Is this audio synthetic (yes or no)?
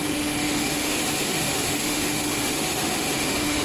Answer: yes